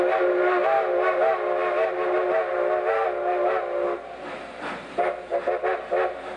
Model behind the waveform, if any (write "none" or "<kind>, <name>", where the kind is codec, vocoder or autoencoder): none